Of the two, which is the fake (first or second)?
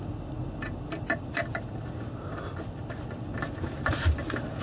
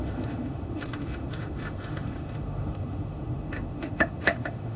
second